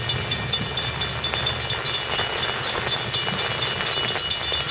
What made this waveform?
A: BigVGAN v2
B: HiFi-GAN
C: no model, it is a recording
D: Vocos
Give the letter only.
C